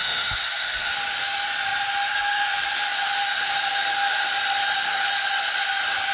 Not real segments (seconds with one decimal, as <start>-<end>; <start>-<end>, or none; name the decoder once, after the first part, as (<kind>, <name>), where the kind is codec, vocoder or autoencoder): 0.0-0.9 (autoencoder, DAC-VAE)